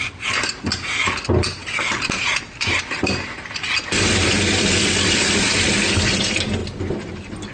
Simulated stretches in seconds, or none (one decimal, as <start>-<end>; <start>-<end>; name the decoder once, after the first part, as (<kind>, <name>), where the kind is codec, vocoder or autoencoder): none